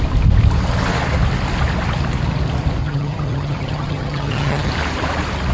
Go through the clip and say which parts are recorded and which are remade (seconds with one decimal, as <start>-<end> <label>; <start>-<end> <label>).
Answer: 0.0-2.8 recorded; 2.8-4.7 remade; 4.7-5.5 recorded